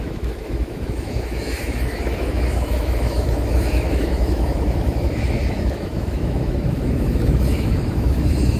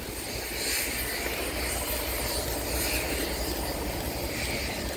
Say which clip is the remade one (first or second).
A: first